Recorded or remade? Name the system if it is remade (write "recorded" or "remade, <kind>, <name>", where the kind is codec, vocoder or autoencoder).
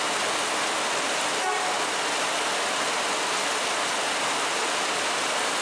recorded